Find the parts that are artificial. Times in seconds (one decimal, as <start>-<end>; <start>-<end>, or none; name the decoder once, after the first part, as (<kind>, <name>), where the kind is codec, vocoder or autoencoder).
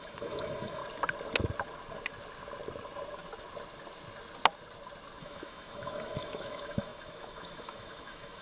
0.0-0.8 (autoencoder, DAC-VAE); 5.2-8.4